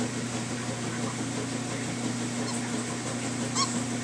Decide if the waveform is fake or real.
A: real